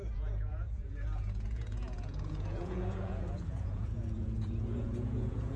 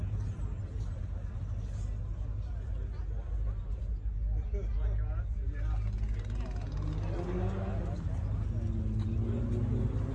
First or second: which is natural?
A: second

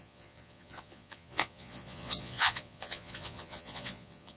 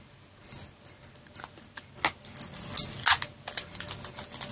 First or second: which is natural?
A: second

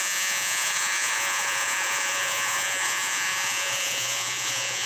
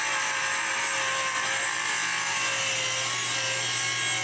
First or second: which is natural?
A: second